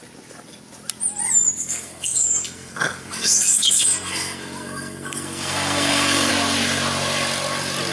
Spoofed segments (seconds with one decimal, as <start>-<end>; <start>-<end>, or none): 1.6-6.3